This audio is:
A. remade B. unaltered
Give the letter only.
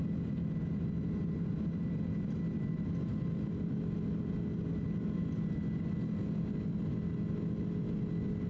B